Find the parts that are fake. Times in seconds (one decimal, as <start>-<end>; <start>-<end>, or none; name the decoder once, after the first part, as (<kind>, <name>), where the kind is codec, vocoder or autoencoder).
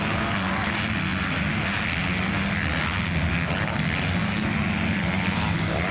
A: none